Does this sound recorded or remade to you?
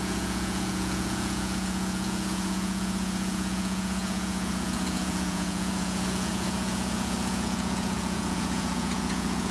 remade